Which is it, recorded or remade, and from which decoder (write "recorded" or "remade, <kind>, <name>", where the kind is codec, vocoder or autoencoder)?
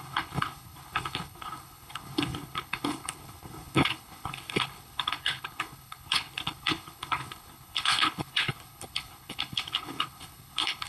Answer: remade, codec, HILCodec